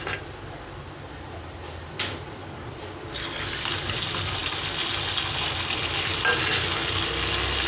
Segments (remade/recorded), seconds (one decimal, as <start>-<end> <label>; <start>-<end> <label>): 0.0-7.7 recorded